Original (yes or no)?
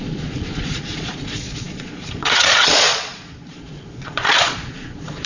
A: no